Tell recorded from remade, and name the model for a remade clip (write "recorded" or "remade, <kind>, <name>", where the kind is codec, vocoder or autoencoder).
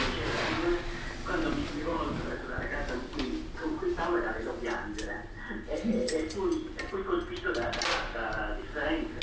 recorded